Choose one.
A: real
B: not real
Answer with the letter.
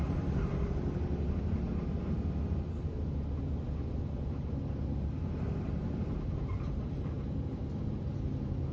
A